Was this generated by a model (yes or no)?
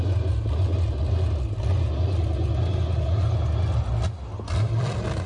no